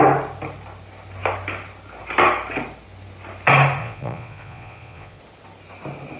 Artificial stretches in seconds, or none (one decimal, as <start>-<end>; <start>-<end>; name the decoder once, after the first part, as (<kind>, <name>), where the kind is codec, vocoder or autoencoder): 3.8-5.2 (vocoder, Vocos)